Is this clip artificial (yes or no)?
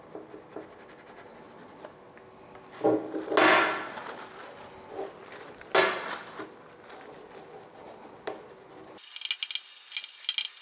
no